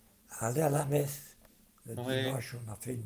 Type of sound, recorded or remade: recorded